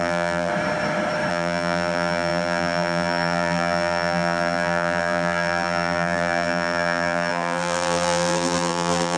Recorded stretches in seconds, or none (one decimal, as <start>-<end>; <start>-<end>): 0.5-1.3